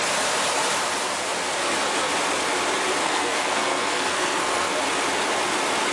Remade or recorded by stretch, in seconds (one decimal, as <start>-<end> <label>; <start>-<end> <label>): 0.0-3.0 recorded; 3.0-4.8 remade; 4.8-5.9 recorded